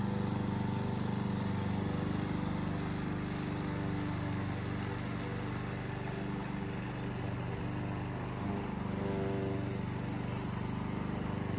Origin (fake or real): real